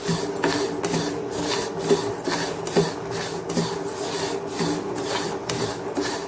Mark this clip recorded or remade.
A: recorded